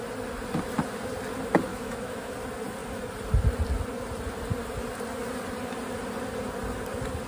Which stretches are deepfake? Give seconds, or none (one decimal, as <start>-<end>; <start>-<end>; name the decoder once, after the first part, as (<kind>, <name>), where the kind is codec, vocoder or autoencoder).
1.7-2.3 (autoencoder, DAC-VAE)